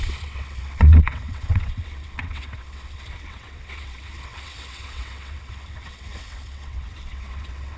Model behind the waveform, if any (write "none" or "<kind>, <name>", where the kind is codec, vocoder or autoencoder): vocoder, WaveNeXt